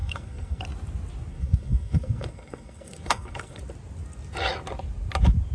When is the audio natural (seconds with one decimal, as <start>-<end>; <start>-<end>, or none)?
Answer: 0.6-1.3; 3.6-5.5